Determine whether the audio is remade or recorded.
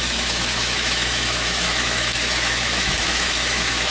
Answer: remade